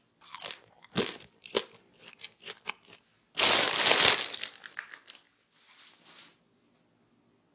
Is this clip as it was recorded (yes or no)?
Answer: yes